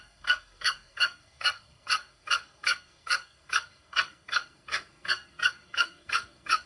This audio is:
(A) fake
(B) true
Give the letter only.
A